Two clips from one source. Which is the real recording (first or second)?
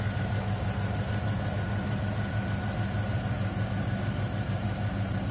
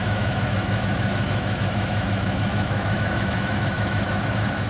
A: first